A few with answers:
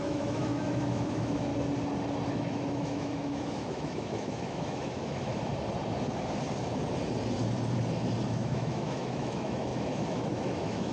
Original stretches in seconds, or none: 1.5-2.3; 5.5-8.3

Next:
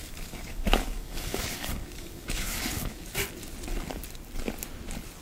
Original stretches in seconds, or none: 3.1-5.2

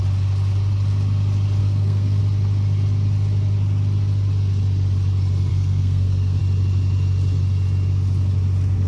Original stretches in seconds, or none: 0.0-1.6; 2.2-5.5; 6.4-8.9

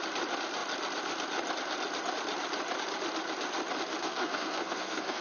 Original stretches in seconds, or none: 0.0-4.0

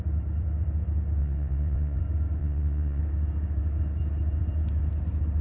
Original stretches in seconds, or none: 0.0-1.2; 2.0-2.4; 3.0-5.4

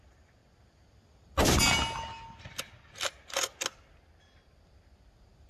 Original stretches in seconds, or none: 0.0-5.5

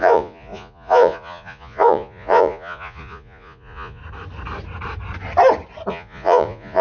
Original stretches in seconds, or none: 4.0-5.9